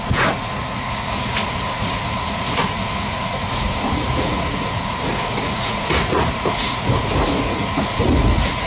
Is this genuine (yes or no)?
no